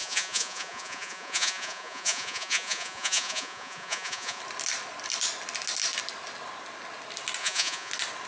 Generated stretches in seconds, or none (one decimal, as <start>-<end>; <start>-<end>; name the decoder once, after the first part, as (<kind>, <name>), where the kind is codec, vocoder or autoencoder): 0.0-4.4 (vocoder, Vocos); 7.4-7.9